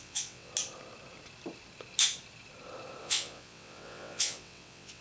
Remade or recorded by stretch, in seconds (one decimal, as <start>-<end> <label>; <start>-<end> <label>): 0.0-0.5 remade; 0.5-3.0 recorded; 3.0-5.0 remade

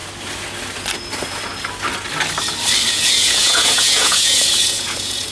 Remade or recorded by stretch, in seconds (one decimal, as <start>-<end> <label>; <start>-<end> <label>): 0.0-2.9 recorded; 2.9-5.3 remade

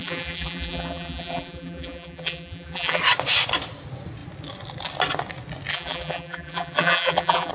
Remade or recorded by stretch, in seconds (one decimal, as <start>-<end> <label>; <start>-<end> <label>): 0.0-3.0 remade; 3.0-5.7 recorded; 5.7-7.5 remade

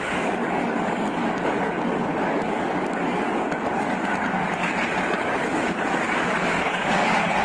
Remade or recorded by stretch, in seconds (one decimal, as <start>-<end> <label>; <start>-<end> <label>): 0.0-7.4 remade

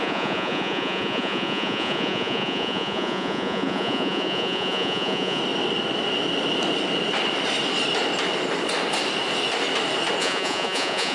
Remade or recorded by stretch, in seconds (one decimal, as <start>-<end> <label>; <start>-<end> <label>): 0.0-5.4 remade; 5.4-10.2 recorded; 10.2-11.1 remade